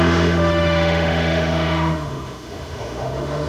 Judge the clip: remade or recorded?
remade